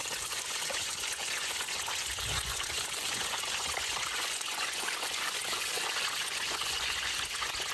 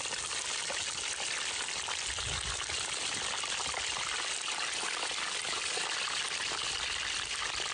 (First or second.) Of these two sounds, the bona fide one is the second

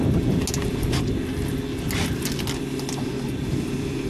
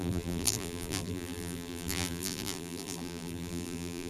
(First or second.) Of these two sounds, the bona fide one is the first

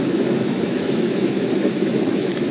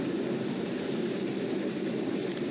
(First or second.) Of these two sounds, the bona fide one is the second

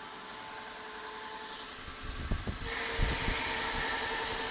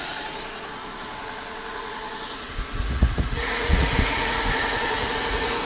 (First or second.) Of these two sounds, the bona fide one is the first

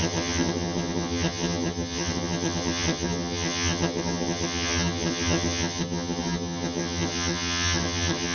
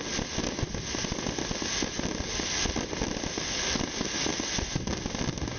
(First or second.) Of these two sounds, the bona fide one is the second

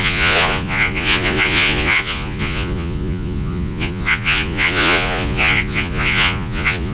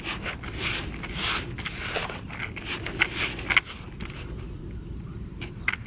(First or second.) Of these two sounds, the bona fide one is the second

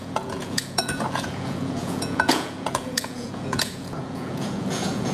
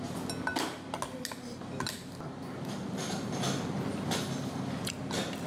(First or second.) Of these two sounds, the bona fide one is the second